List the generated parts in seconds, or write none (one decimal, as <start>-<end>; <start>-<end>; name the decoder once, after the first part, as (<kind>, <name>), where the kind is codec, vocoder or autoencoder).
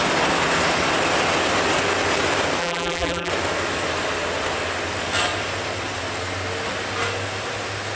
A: 2.6-3.3 (vocoder, BigVGAN v2)